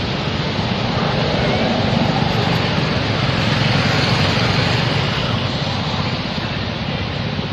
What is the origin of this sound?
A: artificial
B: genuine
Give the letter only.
B